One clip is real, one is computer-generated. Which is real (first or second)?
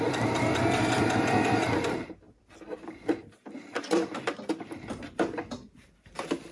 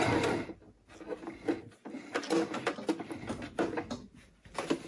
second